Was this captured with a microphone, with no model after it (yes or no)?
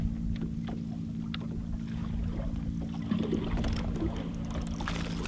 yes